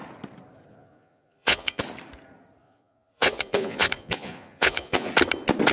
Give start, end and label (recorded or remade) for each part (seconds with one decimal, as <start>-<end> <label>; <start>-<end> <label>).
0.0-0.7 recorded; 0.7-1.8 remade; 1.8-2.6 recorded; 2.6-5.1 remade; 5.1-5.7 recorded

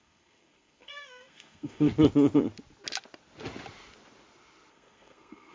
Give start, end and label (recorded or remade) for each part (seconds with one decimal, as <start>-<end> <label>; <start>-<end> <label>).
0.0-1.9 remade; 1.9-4.7 recorded; 4.7-5.5 remade

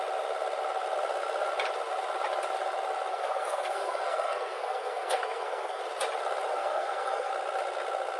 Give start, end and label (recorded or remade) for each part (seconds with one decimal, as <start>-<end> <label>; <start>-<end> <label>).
0.0-3.1 recorded; 3.1-5.8 remade; 5.8-6.5 recorded; 6.5-7.3 remade; 7.3-8.2 recorded

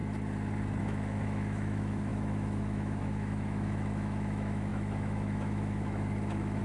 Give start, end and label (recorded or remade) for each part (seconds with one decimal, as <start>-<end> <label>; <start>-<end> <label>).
0.0-0.8 recorded; 0.8-6.6 remade

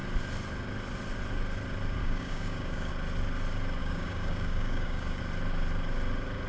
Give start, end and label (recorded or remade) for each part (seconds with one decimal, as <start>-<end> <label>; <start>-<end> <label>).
0.0-2.0 recorded; 2.0-2.9 remade; 2.9-3.8 recorded; 3.8-5.2 remade; 5.2-6.5 recorded

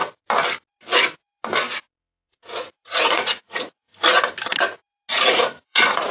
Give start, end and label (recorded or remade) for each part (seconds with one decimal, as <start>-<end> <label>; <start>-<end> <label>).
0.0-2.0 recorded; 2.0-3.9 remade; 3.9-5.1 recorded; 5.1-6.1 remade

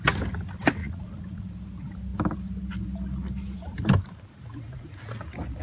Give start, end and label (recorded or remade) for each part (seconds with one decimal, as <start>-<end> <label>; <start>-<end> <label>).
0.0-0.8 recorded; 0.8-1.5 remade; 1.5-5.6 recorded